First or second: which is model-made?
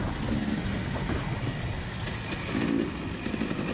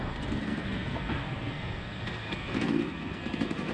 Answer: second